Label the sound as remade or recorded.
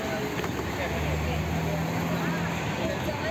recorded